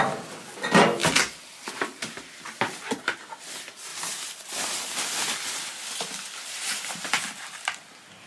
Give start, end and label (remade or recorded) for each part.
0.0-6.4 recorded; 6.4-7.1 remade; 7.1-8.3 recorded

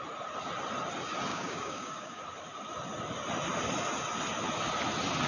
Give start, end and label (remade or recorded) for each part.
0.0-1.3 recorded; 1.3-2.2 remade; 2.2-5.3 recorded

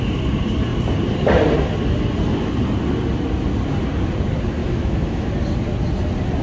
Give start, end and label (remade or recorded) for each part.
0.0-4.6 recorded; 4.6-5.3 remade; 5.3-6.4 recorded